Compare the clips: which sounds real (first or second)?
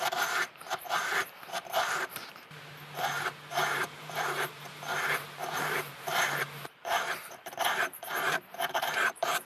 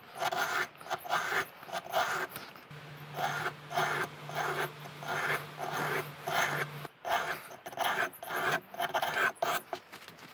second